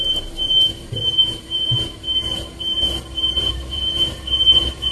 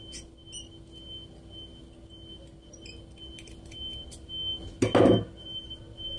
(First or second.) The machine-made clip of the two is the first